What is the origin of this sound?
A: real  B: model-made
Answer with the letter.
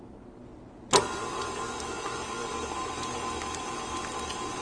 A